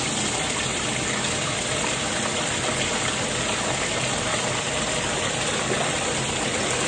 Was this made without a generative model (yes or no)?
yes